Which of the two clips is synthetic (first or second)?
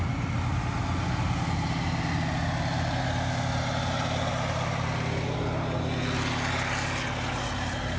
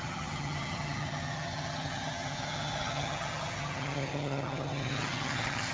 second